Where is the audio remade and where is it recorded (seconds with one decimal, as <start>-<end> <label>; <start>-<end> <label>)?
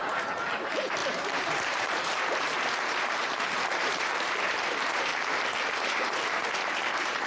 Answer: 0.0-0.6 recorded; 0.6-5.1 remade; 5.1-5.8 recorded; 5.8-7.3 remade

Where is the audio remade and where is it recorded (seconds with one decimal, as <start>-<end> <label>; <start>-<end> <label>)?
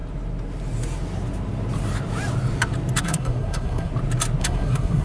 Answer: 0.0-3.0 recorded; 3.0-3.9 remade; 3.9-4.4 recorded; 4.4-5.0 remade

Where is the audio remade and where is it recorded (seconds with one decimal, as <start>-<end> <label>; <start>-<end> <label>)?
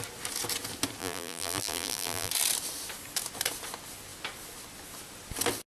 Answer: 0.0-1.0 recorded; 1.0-2.3 remade; 2.3-5.8 recorded